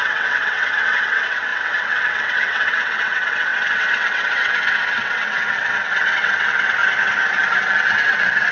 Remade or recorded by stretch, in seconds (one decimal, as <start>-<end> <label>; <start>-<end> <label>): 0.0-6.8 remade; 6.8-7.7 recorded; 7.7-8.5 remade